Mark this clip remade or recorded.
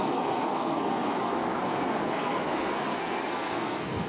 remade